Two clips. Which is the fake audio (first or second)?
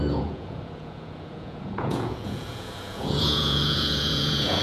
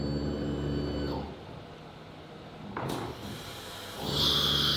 first